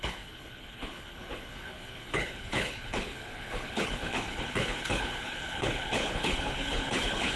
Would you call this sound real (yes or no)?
no